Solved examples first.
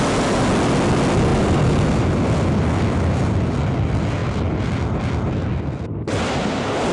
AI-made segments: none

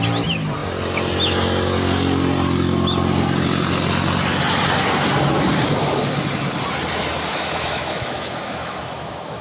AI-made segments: 7.3-9.4 (autoencoder, DAC-VAE)

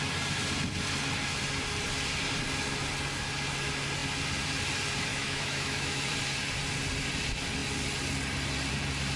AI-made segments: 5.1-6.1 (autoencoder, DAC-VAE)

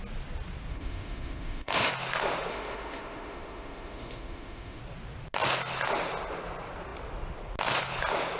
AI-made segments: 0.7-1.9 (autoencoder, DAC-VAE); 2.5-4.8

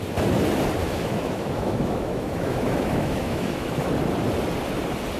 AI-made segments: 0.8-3.9 (autoencoder, DAC-VAE)

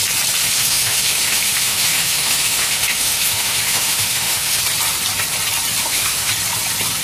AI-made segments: 0.4-4.6 (autoencoder, DAC-VAE); 5.8-6.3